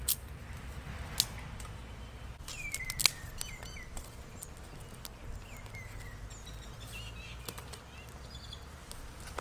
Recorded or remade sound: recorded